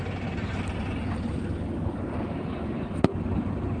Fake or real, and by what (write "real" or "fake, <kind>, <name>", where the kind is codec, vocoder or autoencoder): real